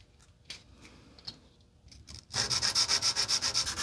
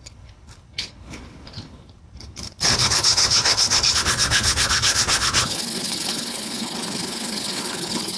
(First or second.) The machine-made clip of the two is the second